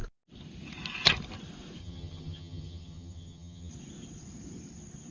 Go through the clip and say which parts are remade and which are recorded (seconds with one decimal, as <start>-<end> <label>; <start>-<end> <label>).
0.0-1.8 recorded; 1.8-3.7 remade; 3.7-5.1 recorded